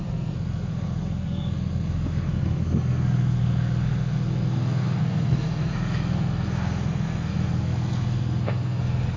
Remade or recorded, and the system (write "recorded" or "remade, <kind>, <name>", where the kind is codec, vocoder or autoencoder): remade, codec, SNAC